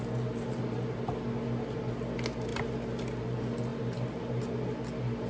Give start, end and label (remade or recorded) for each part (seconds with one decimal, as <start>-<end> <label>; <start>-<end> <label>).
0.0-5.3 recorded